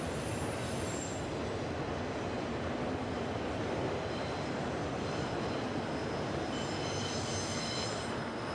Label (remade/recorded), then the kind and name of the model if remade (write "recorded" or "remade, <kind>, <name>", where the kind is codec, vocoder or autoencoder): recorded